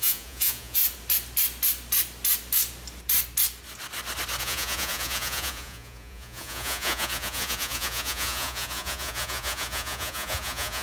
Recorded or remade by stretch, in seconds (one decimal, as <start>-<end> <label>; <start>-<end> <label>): 0.0-0.8 remade; 0.8-4.4 recorded; 4.4-10.8 remade